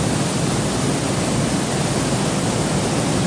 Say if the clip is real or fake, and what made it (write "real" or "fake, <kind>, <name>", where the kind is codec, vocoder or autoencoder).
fake, vocoder, BigVGAN v2